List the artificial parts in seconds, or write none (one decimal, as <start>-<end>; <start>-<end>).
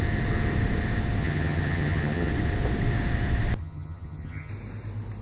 1.2-2.3; 3.6-4.5